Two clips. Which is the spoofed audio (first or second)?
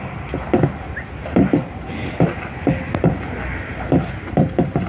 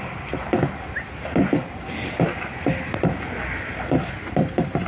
second